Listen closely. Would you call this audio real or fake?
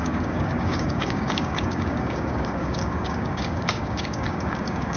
fake